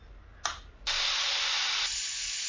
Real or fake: real